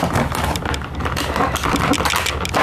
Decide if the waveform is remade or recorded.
recorded